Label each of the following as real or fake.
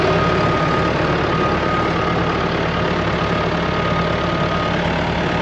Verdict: real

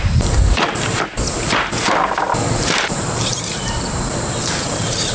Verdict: fake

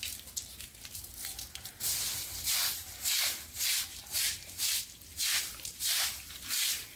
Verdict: fake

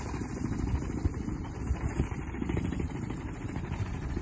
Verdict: fake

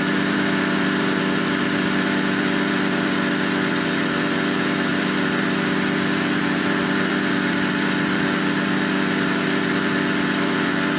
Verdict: fake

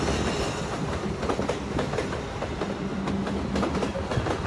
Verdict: real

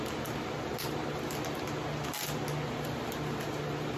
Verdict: real